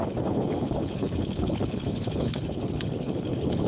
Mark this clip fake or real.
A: fake